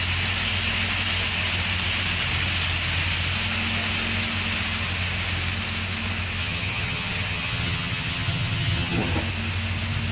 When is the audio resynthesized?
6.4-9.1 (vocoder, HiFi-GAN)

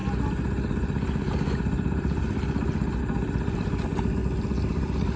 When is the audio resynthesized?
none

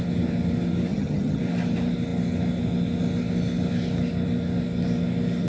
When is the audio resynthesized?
0.9-1.4 (vocoder, HiFi-GAN)

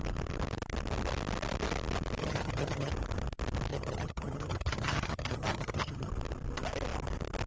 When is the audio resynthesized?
2.2-2.9 (vocoder, HiFi-GAN); 3.7-6.1